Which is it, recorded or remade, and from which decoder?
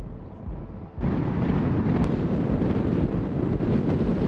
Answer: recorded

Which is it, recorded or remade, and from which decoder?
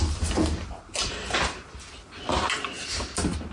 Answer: recorded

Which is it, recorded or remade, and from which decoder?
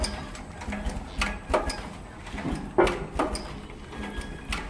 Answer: recorded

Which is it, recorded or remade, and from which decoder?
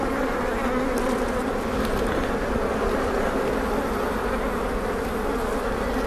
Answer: recorded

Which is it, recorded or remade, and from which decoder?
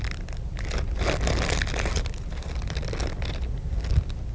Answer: recorded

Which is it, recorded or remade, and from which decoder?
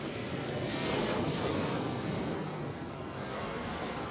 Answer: remade, codec, SNAC